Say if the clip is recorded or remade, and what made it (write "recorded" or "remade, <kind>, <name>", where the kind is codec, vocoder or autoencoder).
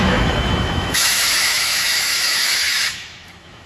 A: remade, autoencoder, DAC-VAE